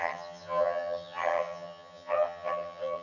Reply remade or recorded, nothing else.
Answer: remade